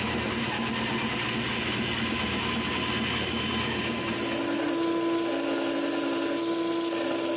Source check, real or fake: real